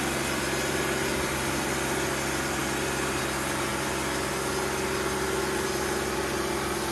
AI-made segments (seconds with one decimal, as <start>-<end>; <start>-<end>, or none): none